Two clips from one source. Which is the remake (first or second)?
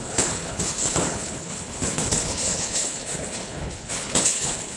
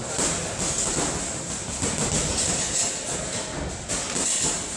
first